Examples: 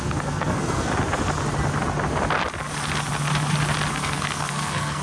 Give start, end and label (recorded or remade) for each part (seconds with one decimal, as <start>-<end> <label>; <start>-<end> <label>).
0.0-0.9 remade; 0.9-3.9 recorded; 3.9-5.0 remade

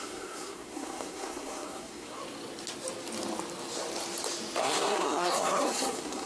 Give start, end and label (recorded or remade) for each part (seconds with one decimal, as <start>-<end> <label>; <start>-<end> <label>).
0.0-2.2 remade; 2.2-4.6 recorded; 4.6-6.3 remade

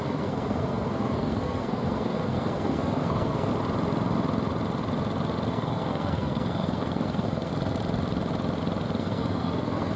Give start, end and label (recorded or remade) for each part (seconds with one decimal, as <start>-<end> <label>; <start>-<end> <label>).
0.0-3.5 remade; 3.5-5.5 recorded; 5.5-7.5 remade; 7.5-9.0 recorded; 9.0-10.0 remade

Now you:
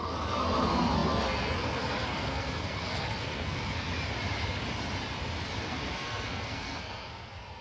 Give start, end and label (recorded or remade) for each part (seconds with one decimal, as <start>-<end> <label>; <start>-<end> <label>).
0.0-3.9 remade; 3.9-5.7 recorded; 5.7-7.6 remade